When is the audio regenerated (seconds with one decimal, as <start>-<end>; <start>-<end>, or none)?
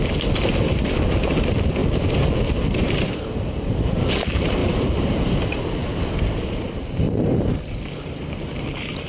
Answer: 0.0-9.1